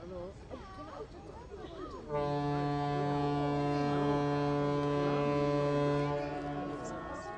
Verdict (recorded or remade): recorded